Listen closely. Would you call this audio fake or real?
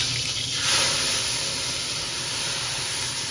real